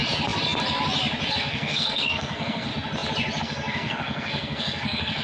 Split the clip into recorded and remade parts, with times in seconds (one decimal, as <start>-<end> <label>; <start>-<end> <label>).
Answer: 0.0-1.3 recorded; 1.3-2.7 remade; 2.7-3.4 recorded; 3.4-5.2 remade